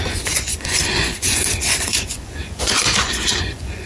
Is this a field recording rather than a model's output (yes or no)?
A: no